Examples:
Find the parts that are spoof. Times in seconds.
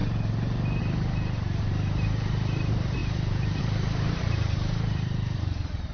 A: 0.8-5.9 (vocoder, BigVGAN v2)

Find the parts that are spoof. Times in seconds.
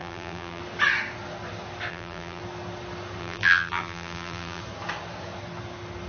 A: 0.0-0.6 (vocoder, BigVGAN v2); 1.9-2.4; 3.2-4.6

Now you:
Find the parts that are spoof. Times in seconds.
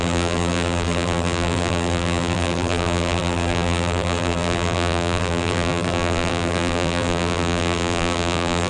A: 0.0-8.7 (vocoder, BigVGAN v2)